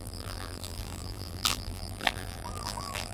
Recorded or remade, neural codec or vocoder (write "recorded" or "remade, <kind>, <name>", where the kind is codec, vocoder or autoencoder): remade, vocoder, BigVGAN v2